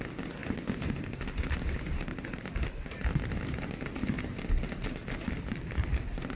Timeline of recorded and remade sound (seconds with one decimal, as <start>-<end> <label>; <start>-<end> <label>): 0.0-5.0 recorded; 5.0-6.4 remade